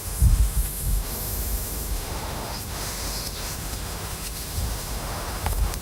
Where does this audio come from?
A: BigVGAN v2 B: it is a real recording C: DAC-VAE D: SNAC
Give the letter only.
C